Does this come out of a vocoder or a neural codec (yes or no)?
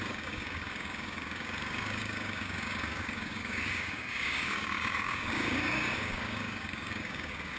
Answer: yes